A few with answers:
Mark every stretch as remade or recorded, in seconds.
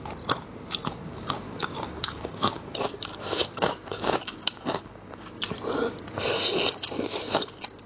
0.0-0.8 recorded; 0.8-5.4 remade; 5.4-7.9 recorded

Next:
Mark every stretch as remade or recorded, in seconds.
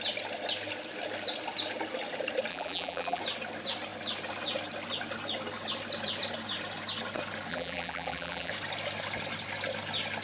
0.0-2.5 recorded; 2.5-3.2 remade; 3.2-7.5 recorded; 7.5-8.5 remade; 8.5-10.2 recorded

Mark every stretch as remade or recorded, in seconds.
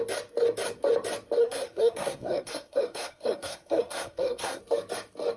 0.0-1.4 recorded; 1.4-4.6 remade; 4.6-5.4 recorded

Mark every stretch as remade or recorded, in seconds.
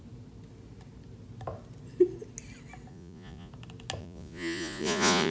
0.0-2.9 recorded; 2.9-3.5 remade; 3.5-4.0 recorded; 4.0-5.3 remade